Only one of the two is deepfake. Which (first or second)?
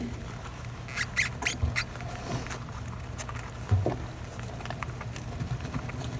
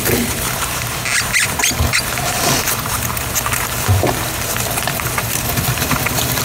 second